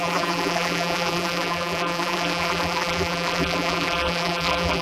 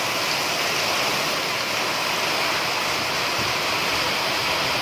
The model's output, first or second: first